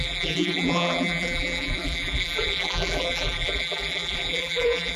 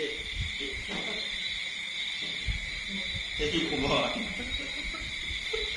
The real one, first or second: second